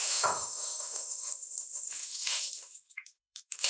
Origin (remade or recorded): remade